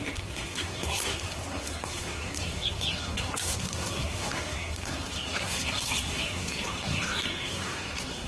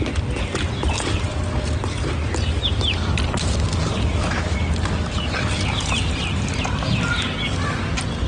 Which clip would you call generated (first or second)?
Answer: first